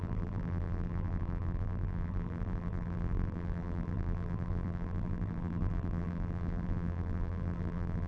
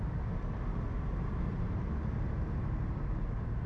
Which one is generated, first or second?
first